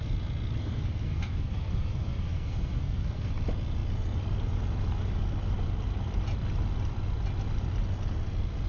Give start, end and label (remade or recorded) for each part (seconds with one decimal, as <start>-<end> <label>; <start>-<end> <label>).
0.0-0.6 recorded; 0.6-3.3 remade; 3.3-8.7 recorded

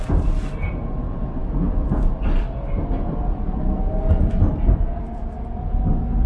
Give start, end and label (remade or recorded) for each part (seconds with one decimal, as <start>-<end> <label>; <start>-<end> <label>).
0.0-1.4 recorded; 1.4-5.2 remade; 5.2-6.3 recorded

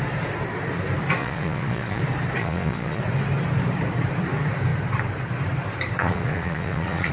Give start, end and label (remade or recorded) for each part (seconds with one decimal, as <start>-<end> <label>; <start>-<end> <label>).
0.0-1.2 recorded; 1.2-2.0 remade; 2.0-2.4 recorded; 2.4-3.0 remade; 3.0-6.0 recorded; 6.0-7.1 remade

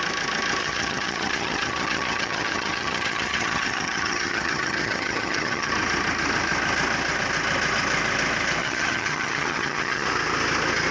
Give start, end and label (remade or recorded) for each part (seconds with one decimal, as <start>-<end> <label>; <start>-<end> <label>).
0.0-0.6 recorded; 0.6-5.7 remade; 5.7-8.6 recorded; 8.6-10.1 remade; 10.1-10.9 recorded

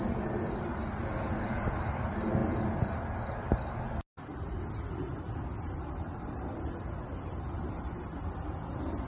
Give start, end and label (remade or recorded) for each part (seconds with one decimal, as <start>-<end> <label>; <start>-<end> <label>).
0.0-9.1 recorded

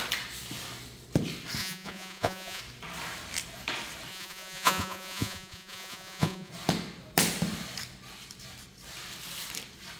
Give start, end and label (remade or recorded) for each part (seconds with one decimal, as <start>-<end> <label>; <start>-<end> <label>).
0.0-1.6 recorded; 1.6-2.6 remade; 2.6-4.1 recorded; 4.1-6.5 remade; 6.5-10.0 recorded

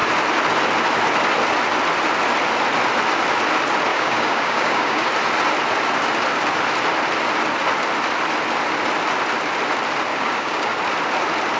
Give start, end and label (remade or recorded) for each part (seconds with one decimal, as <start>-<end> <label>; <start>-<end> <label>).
0.0-3.9 recorded; 3.9-5.1 remade; 5.1-10.1 recorded; 10.1-10.7 remade; 10.7-11.6 recorded